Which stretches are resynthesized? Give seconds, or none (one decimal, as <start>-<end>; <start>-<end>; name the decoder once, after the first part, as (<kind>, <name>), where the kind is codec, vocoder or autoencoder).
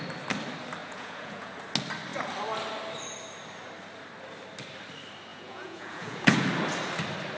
0.8-1.6 (vocoder, Vocos); 5.3-6.5